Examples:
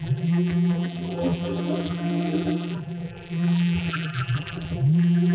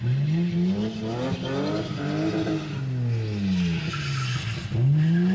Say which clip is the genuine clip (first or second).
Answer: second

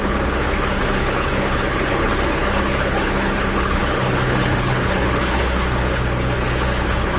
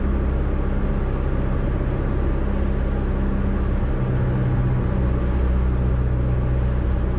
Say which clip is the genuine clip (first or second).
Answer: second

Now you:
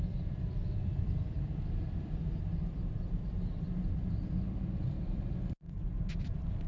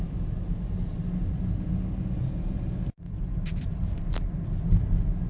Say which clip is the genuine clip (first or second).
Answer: second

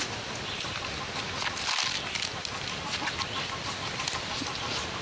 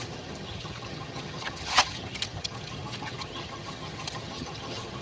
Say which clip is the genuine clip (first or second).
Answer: first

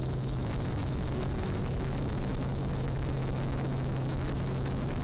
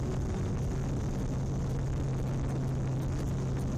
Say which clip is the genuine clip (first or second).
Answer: second